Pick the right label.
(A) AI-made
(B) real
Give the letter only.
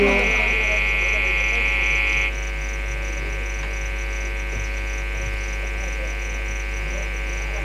B